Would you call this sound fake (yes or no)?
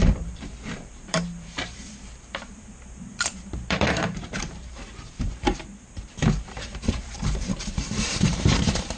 yes